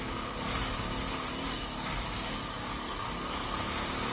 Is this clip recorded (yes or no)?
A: yes